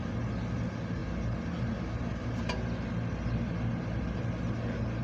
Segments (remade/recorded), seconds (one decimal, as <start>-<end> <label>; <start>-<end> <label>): 0.0-5.0 recorded